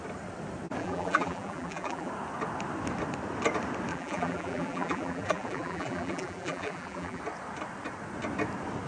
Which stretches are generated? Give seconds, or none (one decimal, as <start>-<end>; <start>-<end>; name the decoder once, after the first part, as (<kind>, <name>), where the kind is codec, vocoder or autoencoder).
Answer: 0.8-2.1 (vocoder, BigVGAN v2); 3.9-7.2